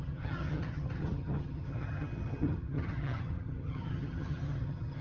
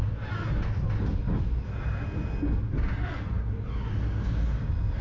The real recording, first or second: second